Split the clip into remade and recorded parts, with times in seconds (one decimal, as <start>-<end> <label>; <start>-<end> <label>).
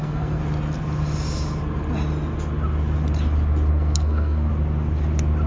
0.0-0.4 remade; 0.4-3.7 recorded; 3.7-4.5 remade; 4.5-5.5 recorded